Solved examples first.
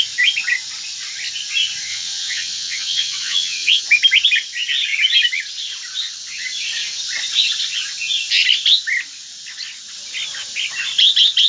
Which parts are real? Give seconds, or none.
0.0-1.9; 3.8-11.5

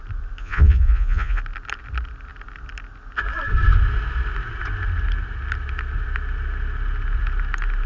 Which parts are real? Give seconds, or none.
0.0-0.4; 1.4-7.9

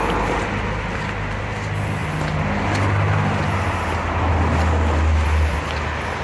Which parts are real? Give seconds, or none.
0.0-6.2

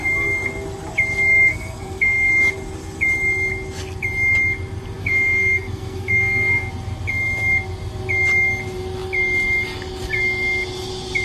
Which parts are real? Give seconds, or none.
0.0-1.5; 2.3-5.0; 6.7-11.2